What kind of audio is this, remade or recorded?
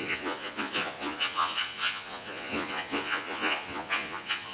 remade